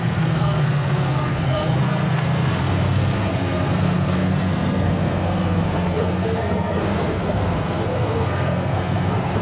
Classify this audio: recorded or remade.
remade